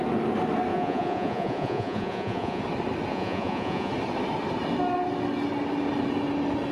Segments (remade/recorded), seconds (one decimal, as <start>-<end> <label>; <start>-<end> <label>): 0.0-0.7 recorded; 0.7-2.6 remade; 2.6-3.1 recorded; 3.1-3.9 remade; 3.9-6.7 recorded